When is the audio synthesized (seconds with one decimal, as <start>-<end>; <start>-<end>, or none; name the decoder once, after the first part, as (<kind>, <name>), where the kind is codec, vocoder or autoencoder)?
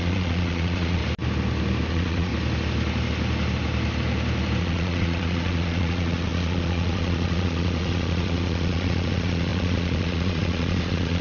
0.0-1.0 (vocoder, Vocos); 1.9-2.3; 4.6-11.2